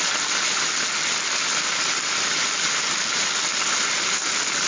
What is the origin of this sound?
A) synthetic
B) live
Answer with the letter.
B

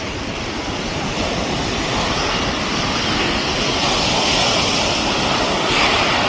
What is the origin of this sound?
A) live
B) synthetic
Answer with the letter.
A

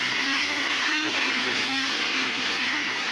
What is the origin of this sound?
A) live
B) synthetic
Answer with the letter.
B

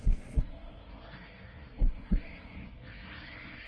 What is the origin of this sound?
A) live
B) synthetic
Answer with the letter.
B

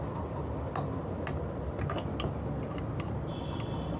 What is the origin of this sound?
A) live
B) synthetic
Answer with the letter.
A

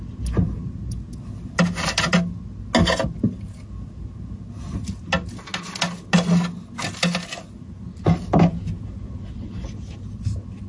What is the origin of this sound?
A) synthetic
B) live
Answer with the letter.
B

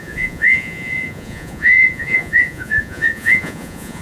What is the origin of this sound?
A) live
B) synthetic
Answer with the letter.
B